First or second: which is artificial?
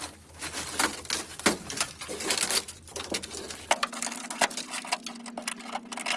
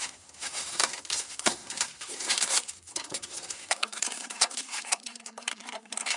second